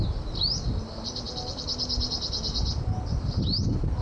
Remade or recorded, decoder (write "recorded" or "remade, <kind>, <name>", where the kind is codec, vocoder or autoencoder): recorded